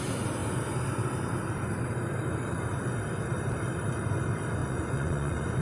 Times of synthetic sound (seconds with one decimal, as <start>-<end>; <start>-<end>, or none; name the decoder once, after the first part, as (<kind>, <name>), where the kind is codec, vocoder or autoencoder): 4.6-5.6 (vocoder, Vocos)